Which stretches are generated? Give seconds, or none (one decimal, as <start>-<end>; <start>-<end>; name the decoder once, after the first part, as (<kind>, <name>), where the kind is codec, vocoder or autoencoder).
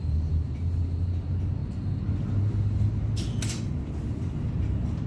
none